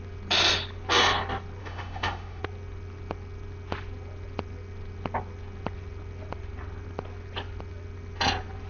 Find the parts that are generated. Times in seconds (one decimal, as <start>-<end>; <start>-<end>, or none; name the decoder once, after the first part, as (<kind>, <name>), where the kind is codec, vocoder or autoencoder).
1.6-2.4 (autoencoder, DAC-VAE)